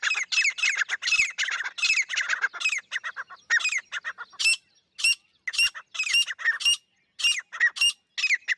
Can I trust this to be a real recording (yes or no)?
yes